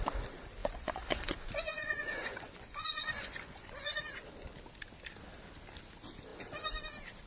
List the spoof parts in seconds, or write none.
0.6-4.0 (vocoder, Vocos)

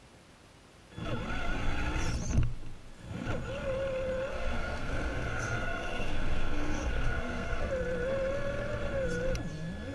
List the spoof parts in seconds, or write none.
4.3-7.7 (codec, SNAC)

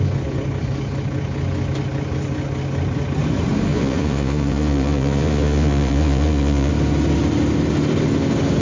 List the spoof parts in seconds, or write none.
3.7-6.7 (vocoder, Vocos)

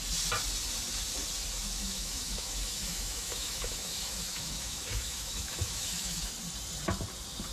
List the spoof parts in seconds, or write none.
1.8-6.3 (autoencoder, DAC-VAE)

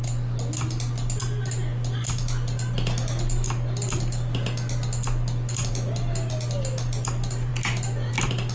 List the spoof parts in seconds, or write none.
none

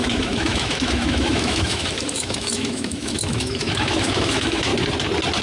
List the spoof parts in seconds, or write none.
0.0-4.7 (autoencoder, DAC-VAE)

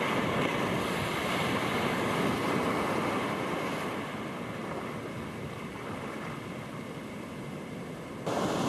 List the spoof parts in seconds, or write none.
none